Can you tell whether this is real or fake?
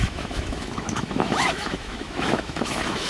fake